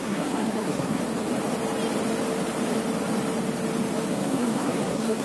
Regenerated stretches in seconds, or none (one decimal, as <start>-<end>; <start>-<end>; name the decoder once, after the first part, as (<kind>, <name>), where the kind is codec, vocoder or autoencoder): 0.0-1.0 (codec, SNAC); 4.1-5.2